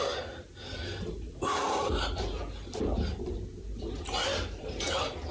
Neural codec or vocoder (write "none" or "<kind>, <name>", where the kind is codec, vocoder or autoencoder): none